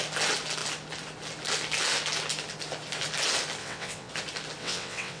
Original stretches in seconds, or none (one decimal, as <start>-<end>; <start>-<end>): 0.0-3.6; 4.1-4.6